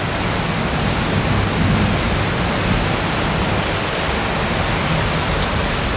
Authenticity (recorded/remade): recorded